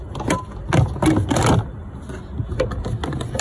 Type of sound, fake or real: real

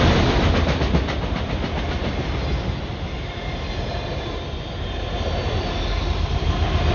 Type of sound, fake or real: real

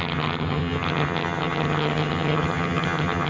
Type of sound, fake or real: fake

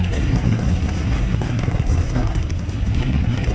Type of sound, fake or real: fake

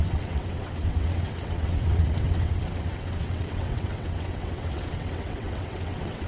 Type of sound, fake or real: fake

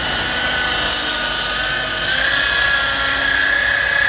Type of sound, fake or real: real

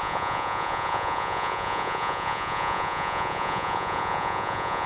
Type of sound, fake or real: fake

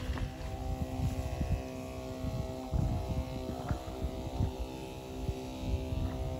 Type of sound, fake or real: real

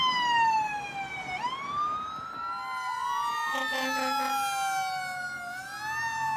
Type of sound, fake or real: real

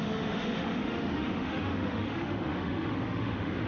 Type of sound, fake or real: fake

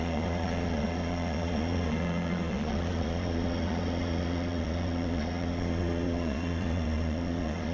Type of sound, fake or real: fake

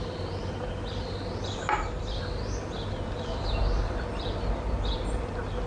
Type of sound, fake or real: real